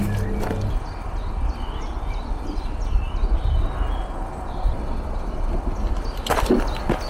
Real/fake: real